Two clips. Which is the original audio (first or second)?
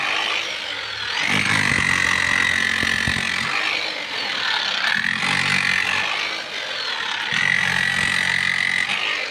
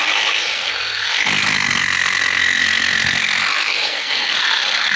first